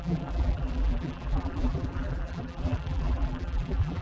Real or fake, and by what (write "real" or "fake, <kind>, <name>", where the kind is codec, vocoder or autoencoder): fake, vocoder, BigVGAN v2